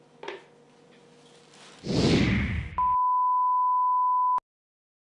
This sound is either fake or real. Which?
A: real